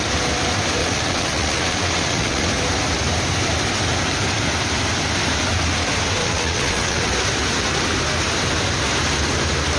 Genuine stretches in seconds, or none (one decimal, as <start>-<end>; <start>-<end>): 0.0-0.8; 2.5-6.2; 7.1-9.8